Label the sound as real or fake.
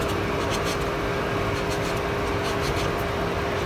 real